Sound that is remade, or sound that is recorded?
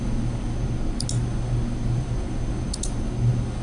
recorded